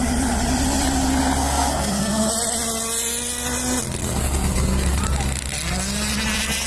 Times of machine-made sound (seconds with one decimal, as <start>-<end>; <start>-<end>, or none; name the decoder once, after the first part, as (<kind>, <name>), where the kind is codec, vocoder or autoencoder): 1.4-2.3 (codec, SNAC); 4.0-5.0